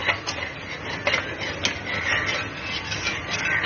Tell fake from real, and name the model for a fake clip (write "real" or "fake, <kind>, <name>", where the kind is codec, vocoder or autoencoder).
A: real